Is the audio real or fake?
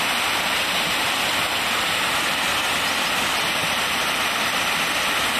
real